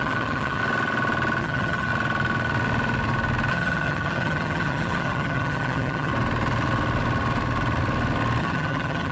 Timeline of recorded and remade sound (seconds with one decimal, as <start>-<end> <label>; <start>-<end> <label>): 0.0-0.6 remade; 0.6-1.4 recorded; 1.4-1.9 remade; 1.9-3.5 recorded; 3.5-6.1 remade; 6.1-8.4 recorded; 8.4-9.1 remade